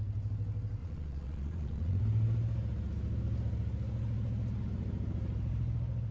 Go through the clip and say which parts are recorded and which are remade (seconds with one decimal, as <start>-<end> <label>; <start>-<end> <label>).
0.0-0.8 recorded; 0.8-2.0 remade; 2.0-6.1 recorded